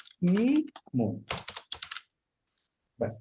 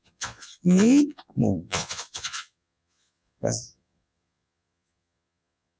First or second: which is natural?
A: first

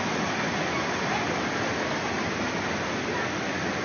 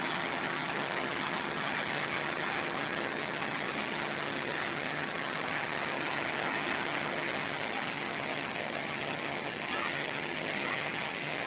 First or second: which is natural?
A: first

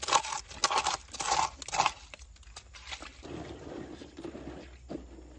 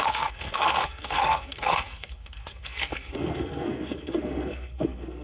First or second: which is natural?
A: first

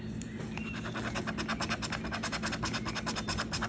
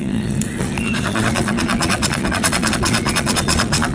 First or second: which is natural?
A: first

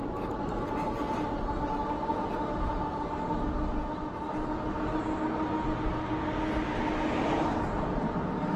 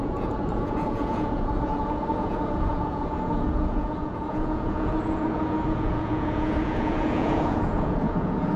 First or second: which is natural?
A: first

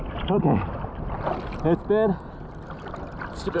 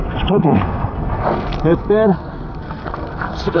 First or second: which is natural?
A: first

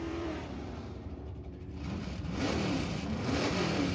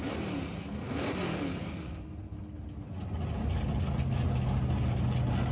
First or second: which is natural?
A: second